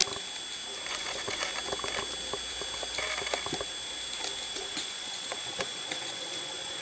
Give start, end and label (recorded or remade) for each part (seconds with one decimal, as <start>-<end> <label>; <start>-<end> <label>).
0.0-0.9 recorded; 0.9-1.5 remade; 1.5-4.5 recorded; 4.5-6.8 remade

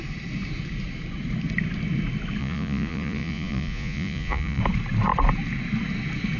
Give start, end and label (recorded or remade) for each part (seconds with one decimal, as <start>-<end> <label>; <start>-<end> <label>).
0.0-2.4 recorded; 2.4-4.6 remade; 4.6-6.4 recorded

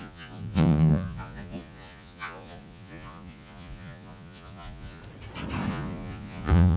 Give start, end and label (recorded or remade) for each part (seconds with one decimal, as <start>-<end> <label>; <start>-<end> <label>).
0.0-5.0 remade; 5.0-5.7 recorded; 5.7-6.8 remade

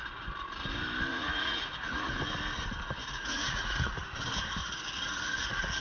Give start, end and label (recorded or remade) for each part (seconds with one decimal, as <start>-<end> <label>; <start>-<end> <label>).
0.0-1.1 recorded; 1.1-2.1 remade; 2.1-3.0 recorded; 3.0-3.9 remade; 3.9-4.6 recorded; 4.6-5.8 remade